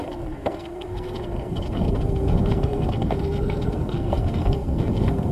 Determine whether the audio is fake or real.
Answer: fake